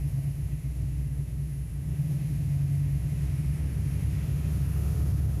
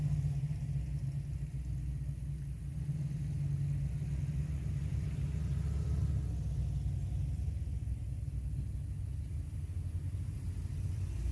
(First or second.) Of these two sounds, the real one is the second